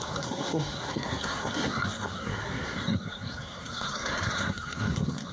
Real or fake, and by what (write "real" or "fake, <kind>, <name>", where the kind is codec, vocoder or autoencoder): fake, codec, SNAC